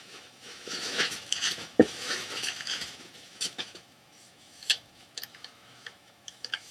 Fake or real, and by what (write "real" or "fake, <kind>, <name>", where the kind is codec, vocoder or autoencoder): fake, autoencoder, DAC-VAE